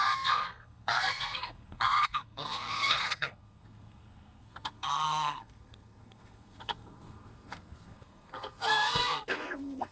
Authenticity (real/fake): fake